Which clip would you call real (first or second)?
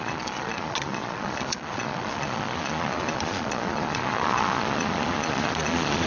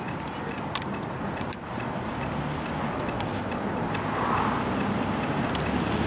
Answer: second